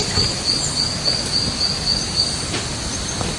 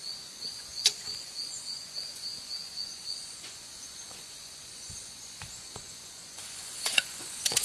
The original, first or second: first